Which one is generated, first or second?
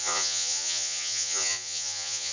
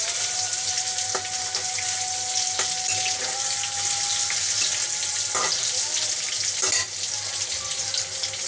first